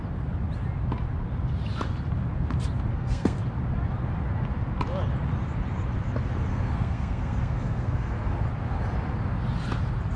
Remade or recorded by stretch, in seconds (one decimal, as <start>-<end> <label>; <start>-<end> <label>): 0.0-2.9 recorded; 2.9-3.4 remade; 3.4-6.5 recorded; 6.5-8.4 remade; 8.4-10.2 recorded